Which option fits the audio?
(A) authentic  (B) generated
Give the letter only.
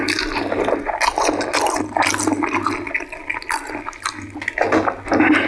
A